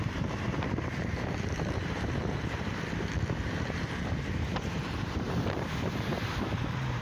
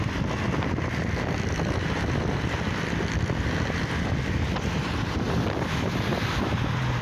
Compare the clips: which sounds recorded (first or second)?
second